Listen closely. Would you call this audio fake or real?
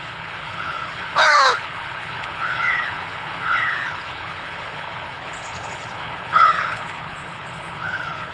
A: fake